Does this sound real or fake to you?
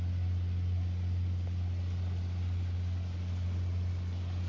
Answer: real